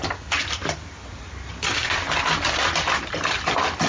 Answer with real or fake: real